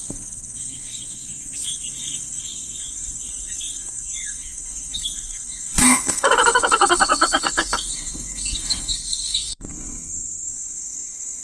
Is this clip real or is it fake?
fake